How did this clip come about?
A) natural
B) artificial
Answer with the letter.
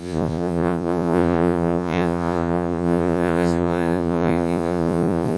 B